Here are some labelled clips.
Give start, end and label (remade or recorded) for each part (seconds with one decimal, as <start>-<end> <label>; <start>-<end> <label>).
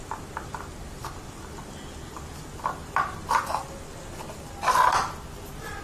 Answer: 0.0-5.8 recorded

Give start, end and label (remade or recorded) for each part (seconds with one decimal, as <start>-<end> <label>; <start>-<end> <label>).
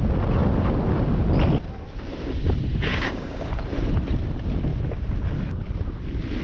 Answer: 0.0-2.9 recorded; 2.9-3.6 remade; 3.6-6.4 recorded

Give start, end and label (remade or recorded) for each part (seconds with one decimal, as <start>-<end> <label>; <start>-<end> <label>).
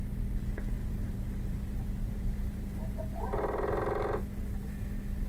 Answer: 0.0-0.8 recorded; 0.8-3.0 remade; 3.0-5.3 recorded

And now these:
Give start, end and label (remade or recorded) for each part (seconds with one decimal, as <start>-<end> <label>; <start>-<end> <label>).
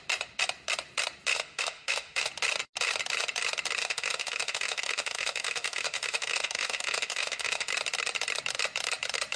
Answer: 0.0-1.3 recorded; 1.3-2.3 remade; 2.3-3.8 recorded; 3.8-7.7 remade; 7.7-9.4 recorded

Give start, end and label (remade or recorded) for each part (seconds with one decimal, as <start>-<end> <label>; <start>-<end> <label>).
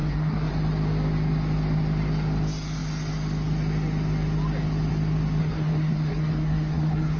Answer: 0.0-0.5 remade; 0.5-5.4 recorded; 5.4-7.2 remade